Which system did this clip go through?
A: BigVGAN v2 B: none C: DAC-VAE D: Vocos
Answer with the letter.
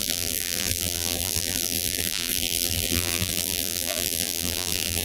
A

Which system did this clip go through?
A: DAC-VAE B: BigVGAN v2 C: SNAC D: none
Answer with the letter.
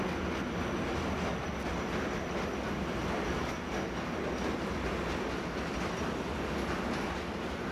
D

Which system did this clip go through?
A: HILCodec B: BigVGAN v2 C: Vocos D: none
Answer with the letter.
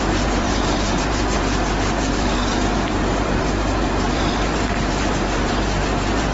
B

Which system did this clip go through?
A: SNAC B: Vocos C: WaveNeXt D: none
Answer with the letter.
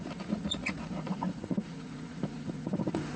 B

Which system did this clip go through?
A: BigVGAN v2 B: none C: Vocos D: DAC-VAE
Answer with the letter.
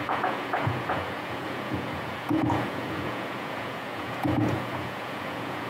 C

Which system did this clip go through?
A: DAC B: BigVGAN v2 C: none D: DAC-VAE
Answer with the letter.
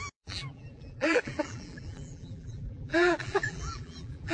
B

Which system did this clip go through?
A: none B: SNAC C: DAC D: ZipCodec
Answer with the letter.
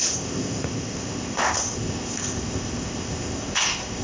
D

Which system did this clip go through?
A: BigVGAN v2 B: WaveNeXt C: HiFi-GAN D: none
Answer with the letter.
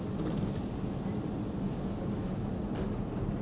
D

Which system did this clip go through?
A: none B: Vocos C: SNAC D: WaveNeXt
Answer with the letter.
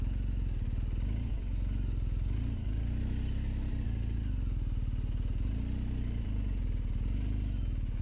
A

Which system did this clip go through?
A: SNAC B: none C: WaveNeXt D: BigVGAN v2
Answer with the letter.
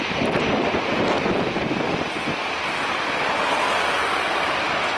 B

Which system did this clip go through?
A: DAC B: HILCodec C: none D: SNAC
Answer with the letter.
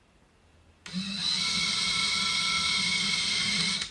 C